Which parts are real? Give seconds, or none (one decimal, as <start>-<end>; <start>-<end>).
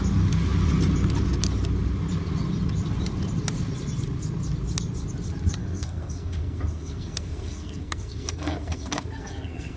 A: 0.0-5.6